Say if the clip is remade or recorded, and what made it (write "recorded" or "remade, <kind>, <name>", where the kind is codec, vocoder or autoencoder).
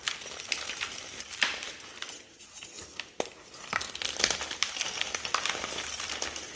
recorded